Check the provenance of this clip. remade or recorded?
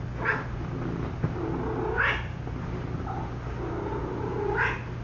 recorded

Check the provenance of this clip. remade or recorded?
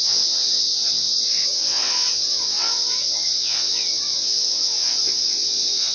remade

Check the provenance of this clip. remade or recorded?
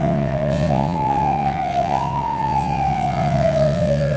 remade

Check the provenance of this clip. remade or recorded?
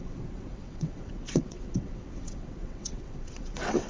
remade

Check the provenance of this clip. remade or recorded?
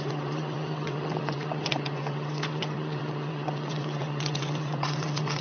remade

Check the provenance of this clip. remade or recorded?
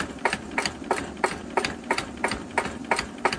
recorded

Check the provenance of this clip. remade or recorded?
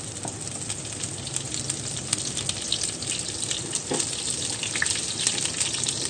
recorded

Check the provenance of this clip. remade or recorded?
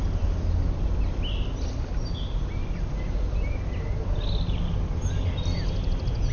recorded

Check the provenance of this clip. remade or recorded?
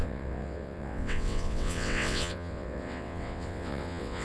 remade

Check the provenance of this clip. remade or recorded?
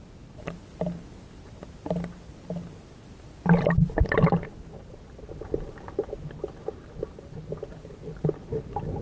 recorded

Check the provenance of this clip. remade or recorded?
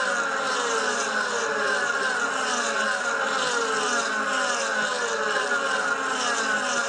recorded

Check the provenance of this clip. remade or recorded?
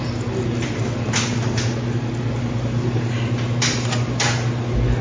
recorded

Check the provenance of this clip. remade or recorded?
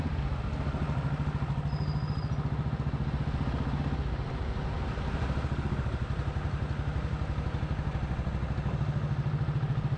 recorded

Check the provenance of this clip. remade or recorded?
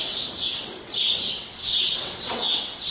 remade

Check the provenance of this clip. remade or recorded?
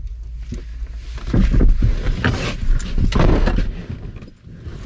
recorded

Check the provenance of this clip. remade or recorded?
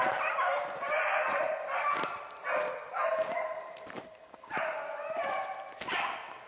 recorded